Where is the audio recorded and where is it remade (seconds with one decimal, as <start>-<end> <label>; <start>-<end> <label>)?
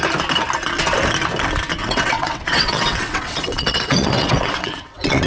0.0-1.8 recorded; 1.8-5.3 remade